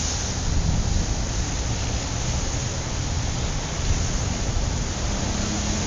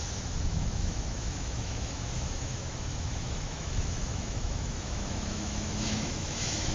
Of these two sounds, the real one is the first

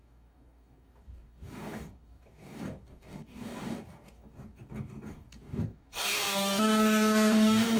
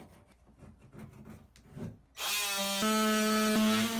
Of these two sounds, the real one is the second